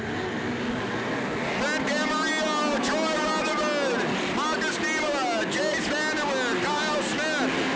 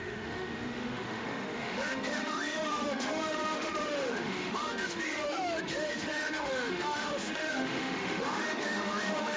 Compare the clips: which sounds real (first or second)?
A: first